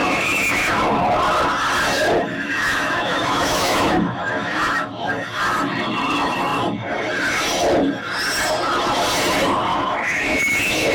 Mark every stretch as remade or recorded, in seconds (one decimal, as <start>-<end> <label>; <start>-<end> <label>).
0.0-0.7 remade; 0.7-2.3 recorded; 2.3-5.1 remade; 5.1-9.7 recorded; 9.7-10.9 remade